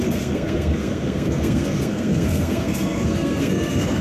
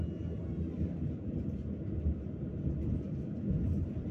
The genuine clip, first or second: second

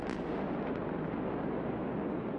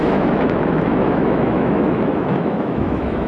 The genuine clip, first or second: first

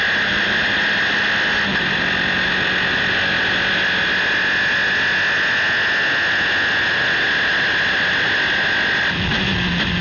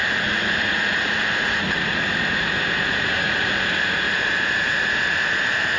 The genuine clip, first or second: first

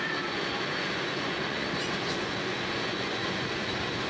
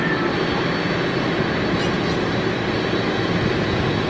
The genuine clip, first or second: second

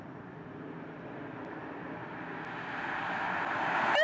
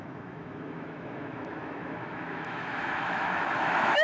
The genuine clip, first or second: first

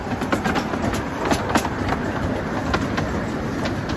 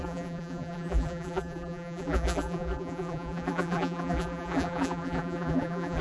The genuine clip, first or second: first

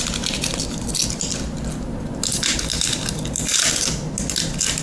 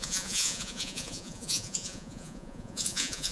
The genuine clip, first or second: first